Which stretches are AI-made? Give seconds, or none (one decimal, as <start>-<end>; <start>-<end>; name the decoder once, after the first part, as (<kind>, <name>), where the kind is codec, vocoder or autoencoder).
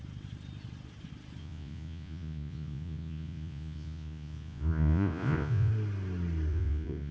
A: 1.4-5.7 (vocoder, Vocos); 6.5-7.1